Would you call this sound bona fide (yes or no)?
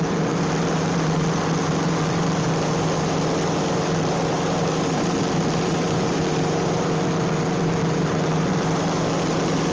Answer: no